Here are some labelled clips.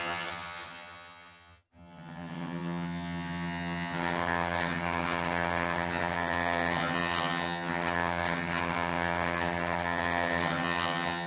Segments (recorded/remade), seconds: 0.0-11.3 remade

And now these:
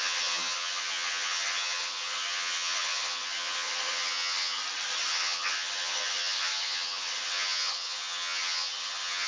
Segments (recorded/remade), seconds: 0.0-4.6 remade; 4.6-5.1 recorded; 5.1-9.3 remade